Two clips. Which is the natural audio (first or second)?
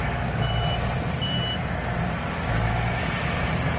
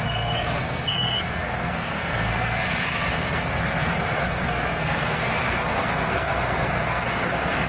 first